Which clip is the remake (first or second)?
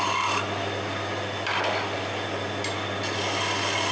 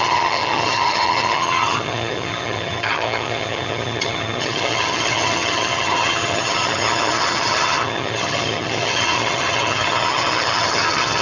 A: second